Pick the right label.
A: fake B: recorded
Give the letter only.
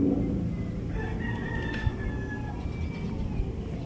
B